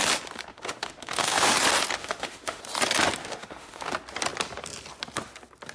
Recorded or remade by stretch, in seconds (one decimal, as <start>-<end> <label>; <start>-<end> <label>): 0.0-0.5 recorded; 0.5-1.5 remade; 1.5-2.0 recorded; 2.0-2.6 remade; 2.6-3.2 recorded; 3.2-3.9 remade; 3.9-5.7 recorded